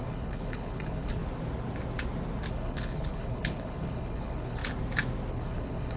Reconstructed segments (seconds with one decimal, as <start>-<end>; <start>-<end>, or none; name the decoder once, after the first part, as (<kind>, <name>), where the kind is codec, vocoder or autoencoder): 0.0-1.2 (codec, HILCodec); 2.5-4.6; 5.3-6.0